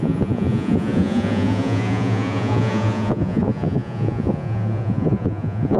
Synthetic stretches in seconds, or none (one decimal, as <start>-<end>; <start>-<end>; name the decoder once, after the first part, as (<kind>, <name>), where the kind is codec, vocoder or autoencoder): 0.0-5.8 (vocoder, Vocos)